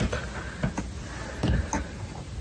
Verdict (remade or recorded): recorded